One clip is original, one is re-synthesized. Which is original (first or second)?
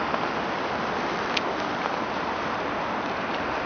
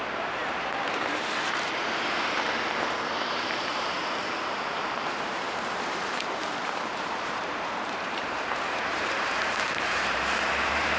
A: first